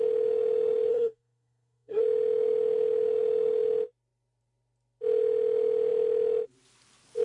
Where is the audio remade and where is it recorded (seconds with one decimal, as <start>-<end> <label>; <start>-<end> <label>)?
0.0-0.9 recorded; 0.9-2.0 remade; 2.0-7.2 recorded